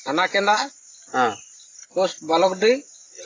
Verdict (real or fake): real